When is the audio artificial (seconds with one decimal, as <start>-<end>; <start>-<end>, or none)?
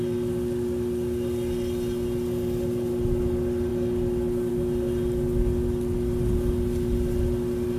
none